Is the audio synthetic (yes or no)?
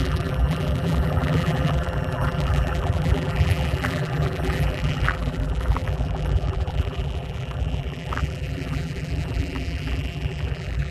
yes